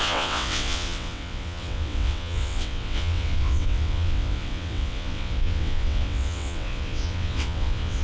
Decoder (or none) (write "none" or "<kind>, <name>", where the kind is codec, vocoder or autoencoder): vocoder, WaveNeXt